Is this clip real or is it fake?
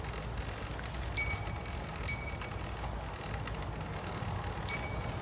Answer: real